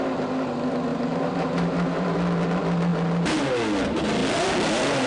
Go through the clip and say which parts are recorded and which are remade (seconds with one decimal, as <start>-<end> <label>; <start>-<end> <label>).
0.0-0.9 recorded; 0.9-2.0 remade; 2.0-5.1 recorded